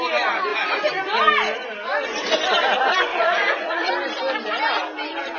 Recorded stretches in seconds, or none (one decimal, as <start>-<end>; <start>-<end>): 0.0-3.1; 3.9-5.4